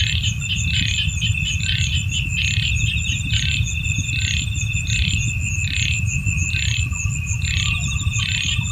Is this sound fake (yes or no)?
no